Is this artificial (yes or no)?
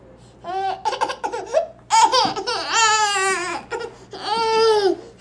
no